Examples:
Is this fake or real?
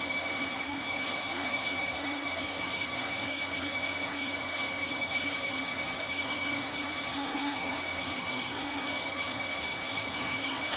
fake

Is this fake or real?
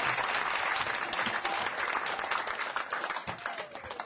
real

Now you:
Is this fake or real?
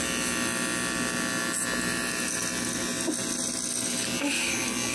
real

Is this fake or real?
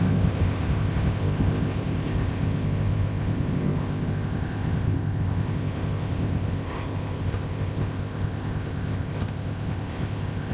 fake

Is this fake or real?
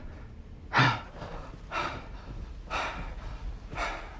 real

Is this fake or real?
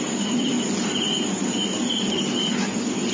real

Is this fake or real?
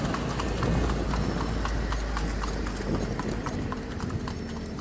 real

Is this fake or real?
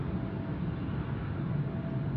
real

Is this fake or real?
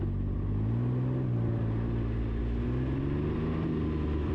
real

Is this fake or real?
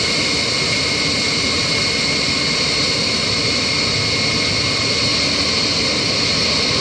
real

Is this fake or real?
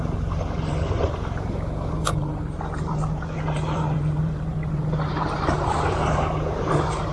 fake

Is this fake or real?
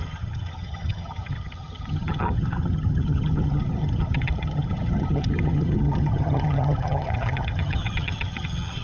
fake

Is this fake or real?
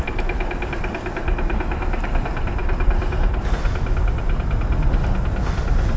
real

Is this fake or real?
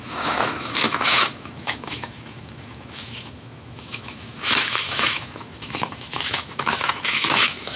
fake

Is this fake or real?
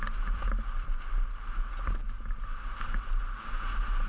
real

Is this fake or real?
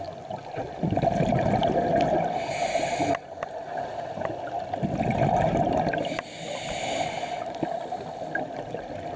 real